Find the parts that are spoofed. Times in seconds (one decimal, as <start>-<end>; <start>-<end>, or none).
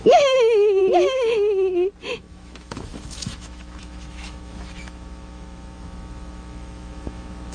0.0-0.8; 2.0-7.5